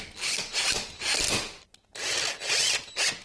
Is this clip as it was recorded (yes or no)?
yes